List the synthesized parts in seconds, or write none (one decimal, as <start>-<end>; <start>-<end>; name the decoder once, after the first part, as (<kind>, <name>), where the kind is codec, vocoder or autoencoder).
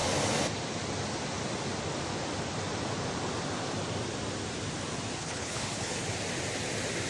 5.2-6.0 (codec, HILCodec)